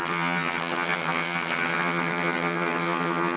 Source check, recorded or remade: remade